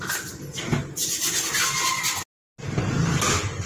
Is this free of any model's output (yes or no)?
yes